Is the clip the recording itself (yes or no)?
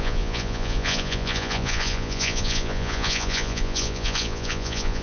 no